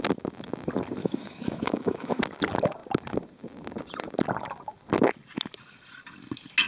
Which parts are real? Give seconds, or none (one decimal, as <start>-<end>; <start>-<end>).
0.0-1.0; 2.2-6.7